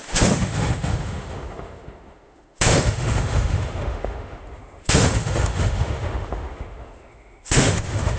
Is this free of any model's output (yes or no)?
no